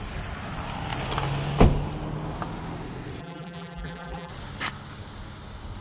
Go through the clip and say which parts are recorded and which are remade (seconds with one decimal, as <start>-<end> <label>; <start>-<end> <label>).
0.0-3.2 recorded; 3.2-4.3 remade; 4.3-5.8 recorded

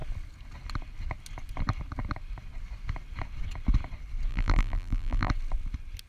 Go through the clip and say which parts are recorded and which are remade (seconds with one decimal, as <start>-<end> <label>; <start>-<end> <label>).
0.0-4.3 recorded; 4.3-5.3 remade; 5.3-6.1 recorded

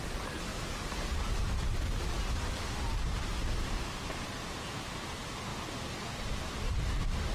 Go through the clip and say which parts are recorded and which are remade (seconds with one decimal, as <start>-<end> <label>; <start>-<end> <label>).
0.0-0.5 remade; 0.5-4.9 recorded; 4.9-5.5 remade; 5.5-6.1 recorded; 6.1-7.3 remade

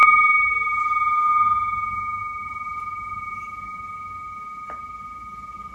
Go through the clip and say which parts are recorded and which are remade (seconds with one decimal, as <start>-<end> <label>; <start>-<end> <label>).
0.0-0.8 remade; 0.8-5.7 recorded

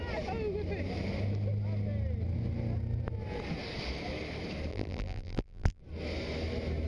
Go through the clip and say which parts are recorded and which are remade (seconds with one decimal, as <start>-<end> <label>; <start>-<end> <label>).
0.0-4.7 recorded; 4.7-5.8 remade; 5.8-6.9 recorded

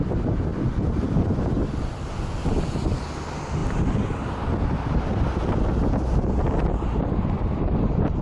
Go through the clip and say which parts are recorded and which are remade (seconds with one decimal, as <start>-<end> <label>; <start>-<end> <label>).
0.0-8.2 recorded

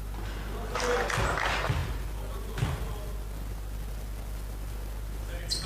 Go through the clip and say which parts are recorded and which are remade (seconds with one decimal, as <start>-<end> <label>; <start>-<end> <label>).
0.0-5.7 recorded

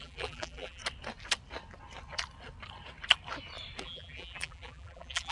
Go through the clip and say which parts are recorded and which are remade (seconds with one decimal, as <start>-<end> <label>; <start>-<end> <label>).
0.0-0.8 remade; 0.8-3.8 recorded; 3.8-5.3 remade